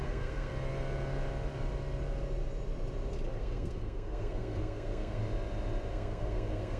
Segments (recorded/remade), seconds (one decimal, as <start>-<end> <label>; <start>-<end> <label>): 0.0-0.5 remade; 0.5-3.4 recorded; 3.4-5.2 remade; 5.2-5.9 recorded; 5.9-6.8 remade